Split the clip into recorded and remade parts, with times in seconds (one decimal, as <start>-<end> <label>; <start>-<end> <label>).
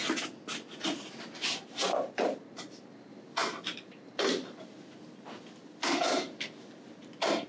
0.0-7.5 recorded